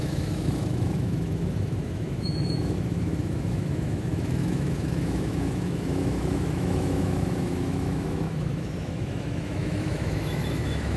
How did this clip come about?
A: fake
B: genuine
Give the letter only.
A